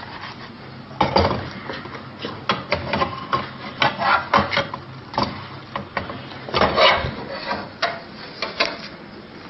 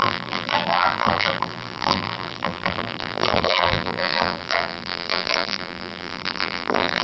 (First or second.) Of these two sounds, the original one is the first